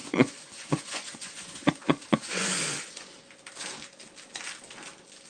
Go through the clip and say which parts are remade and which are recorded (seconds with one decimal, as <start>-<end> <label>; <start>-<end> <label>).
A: 0.0-3.2 remade; 3.2-5.3 recorded